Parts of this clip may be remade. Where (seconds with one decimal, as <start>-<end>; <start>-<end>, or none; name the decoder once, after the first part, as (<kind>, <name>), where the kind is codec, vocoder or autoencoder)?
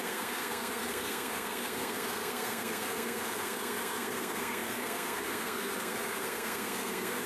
0.0-7.3 (codec, SNAC)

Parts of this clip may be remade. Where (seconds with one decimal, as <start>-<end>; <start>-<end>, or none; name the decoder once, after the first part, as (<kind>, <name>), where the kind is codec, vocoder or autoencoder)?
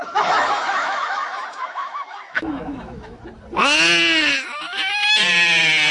0.0-3.2 (autoencoder, DAC-VAE)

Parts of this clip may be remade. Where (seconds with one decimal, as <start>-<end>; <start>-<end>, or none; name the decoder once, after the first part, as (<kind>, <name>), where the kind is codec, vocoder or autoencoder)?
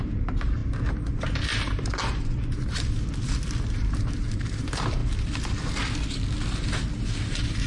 0.0-0.6 (vocoder, BigVGAN v2); 3.7-5.0; 7.2-7.7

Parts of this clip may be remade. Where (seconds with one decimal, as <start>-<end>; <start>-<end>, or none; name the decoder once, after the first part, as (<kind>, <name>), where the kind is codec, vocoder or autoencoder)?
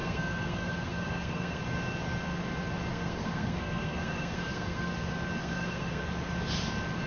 0.0-1.6 (codec, SNAC); 2.9-4.9; 5.4-6.0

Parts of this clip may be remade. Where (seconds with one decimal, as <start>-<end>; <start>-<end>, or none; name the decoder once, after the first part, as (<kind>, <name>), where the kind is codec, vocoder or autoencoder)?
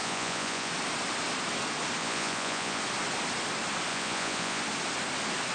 0.0-0.7 (vocoder, Vocos); 2.0-2.8; 3.9-4.6